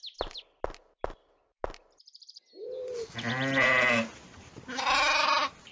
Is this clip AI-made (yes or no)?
no